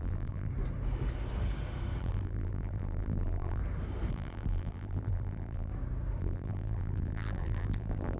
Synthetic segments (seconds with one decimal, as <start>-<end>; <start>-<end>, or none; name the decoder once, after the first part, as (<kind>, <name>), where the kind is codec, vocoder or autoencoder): 0.0-0.5 (vocoder, BigVGAN v2); 2.0-3.6; 4.1-5.7; 6.2-8.2